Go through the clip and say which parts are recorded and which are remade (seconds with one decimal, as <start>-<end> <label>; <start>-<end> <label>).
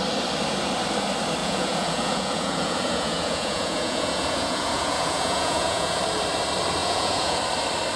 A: 0.0-1.4 recorded; 1.4-6.0 remade; 6.0-6.8 recorded; 6.8-7.4 remade; 7.4-8.0 recorded